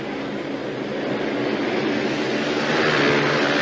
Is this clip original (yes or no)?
yes